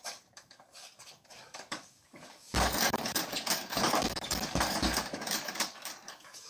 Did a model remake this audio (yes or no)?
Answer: yes